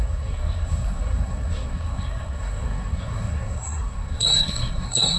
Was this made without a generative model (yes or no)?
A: no